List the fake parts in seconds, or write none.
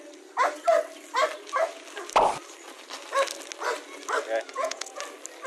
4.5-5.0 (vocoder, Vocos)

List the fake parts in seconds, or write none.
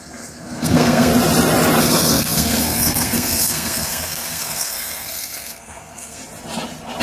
0.0-1.1 (codec, SNAC); 1.8-6.2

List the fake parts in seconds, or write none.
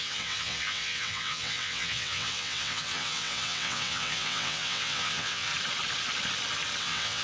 0.0-5.5 (vocoder, WaveNeXt); 6.8-7.2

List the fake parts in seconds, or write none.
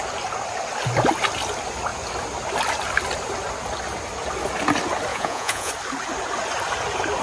5.1-5.7 (vocoder, Vocos)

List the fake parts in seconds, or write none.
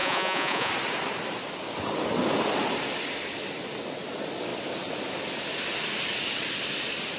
0.0-0.7 (vocoder, Vocos)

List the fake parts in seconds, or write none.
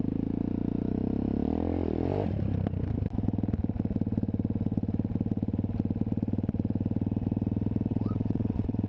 7.9-8.9 (vocoder, WaveNeXt)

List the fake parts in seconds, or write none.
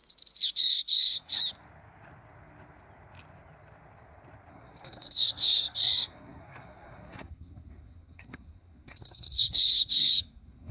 0.6-1.4 (codec, SNAC); 4.5-10.7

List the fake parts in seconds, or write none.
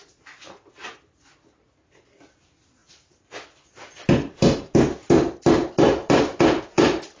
none